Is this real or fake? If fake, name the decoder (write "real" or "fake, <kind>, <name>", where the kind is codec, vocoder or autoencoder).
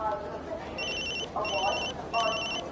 real